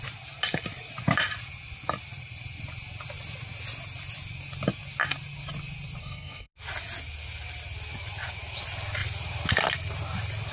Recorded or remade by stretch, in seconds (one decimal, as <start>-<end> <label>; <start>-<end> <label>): 0.0-6.0 recorded; 6.0-6.5 remade; 6.5-10.5 recorded